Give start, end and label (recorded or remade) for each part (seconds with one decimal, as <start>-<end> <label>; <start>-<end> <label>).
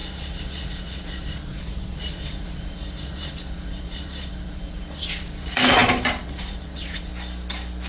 0.0-7.1 remade; 7.1-7.9 recorded